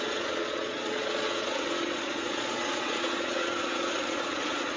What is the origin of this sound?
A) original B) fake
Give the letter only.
B